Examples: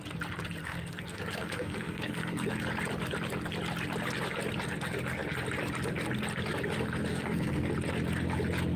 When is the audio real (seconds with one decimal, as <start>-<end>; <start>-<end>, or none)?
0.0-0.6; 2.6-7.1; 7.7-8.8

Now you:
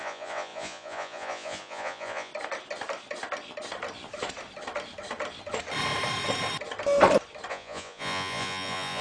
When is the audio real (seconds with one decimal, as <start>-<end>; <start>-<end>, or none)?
2.3-7.5

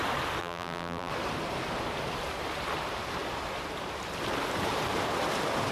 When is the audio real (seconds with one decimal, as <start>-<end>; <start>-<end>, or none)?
0.0-0.4; 1.1-5.7

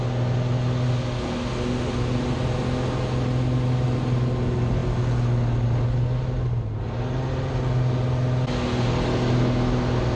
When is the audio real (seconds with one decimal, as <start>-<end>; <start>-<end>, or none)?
0.0-10.2

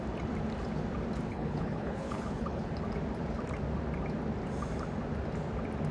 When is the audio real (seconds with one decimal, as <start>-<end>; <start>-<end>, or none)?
0.0-1.3; 2.7-5.9